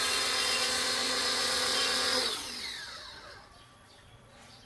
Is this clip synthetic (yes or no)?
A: yes